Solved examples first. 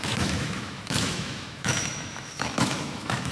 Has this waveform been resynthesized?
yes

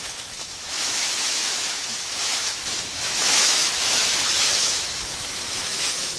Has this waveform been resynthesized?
yes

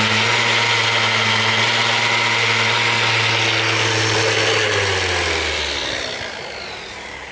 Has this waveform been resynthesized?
no